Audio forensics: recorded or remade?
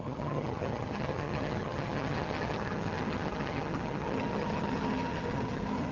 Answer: remade